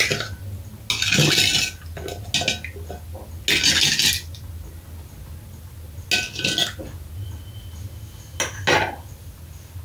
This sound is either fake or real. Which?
real